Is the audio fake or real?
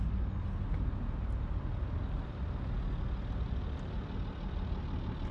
real